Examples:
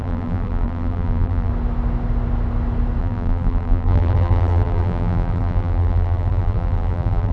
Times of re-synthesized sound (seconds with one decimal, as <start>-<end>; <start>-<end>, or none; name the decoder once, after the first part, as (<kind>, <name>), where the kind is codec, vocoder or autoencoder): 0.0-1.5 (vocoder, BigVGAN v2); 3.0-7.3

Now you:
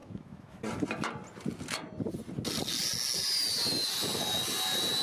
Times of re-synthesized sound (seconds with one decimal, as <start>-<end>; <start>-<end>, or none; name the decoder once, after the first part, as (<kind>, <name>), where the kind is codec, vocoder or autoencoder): 0.0-0.6 (autoencoder, DAC-VAE)

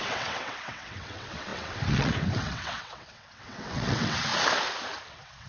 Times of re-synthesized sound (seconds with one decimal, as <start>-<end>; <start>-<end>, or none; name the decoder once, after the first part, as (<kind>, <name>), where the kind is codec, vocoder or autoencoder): 0.0-4.3 (vocoder, WaveNeXt); 5.1-5.5